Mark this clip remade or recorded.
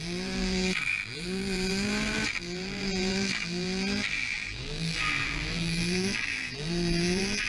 remade